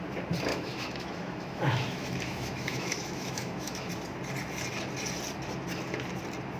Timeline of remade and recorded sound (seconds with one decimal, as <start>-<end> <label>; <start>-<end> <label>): 0.0-0.5 recorded; 0.5-3.9 remade; 3.9-6.6 recorded